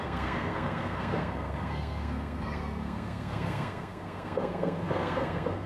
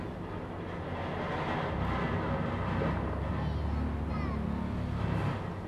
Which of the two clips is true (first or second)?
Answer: second